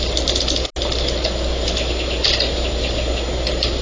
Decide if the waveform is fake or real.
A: real